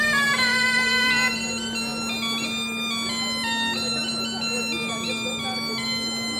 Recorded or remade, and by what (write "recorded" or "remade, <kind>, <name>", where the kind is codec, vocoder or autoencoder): recorded